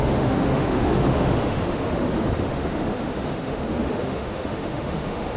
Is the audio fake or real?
fake